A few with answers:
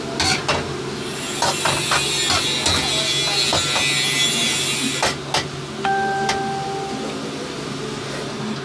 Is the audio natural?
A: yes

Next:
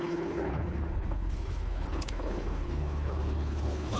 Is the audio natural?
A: no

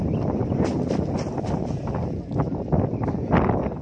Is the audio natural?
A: yes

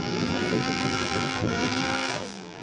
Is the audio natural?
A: no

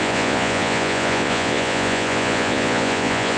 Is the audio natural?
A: no